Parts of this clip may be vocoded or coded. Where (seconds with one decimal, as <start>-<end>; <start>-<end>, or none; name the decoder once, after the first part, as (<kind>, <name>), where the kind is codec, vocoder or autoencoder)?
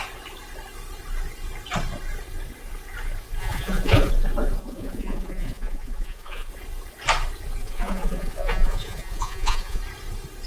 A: 3.4-4.1 (vocoder, Vocos); 4.6-6.5; 7.6-9.8